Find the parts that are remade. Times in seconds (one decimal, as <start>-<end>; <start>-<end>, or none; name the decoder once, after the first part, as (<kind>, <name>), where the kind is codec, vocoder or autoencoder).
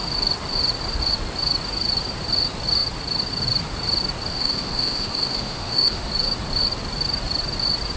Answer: 4.3-6.1 (autoencoder, DAC-VAE)